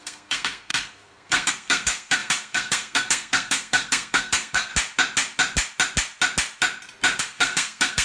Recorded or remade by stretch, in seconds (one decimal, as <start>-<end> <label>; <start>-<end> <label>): 0.0-4.7 remade; 4.7-7.2 recorded; 7.2-8.0 remade